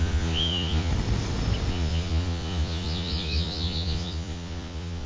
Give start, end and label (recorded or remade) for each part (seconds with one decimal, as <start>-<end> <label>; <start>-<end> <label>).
0.0-0.9 remade; 0.9-1.7 recorded; 1.7-5.1 remade